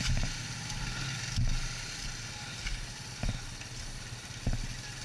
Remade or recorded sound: recorded